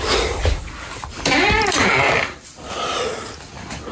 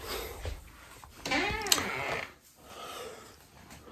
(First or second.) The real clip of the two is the second